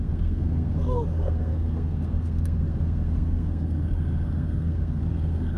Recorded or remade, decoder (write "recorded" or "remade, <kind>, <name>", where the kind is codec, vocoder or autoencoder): remade, codec, SNAC